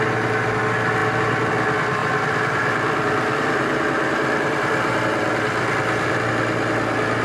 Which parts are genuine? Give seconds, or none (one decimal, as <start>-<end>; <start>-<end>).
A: 0.0-2.0; 6.3-7.2